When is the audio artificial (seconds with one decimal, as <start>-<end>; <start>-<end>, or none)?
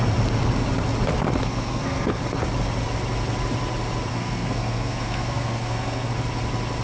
1.4-2.2; 4.1-6.1